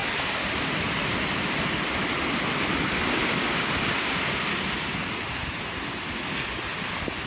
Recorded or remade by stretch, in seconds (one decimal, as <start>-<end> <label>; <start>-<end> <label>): 0.0-3.2 recorded; 3.2-3.7 remade; 3.7-7.3 recorded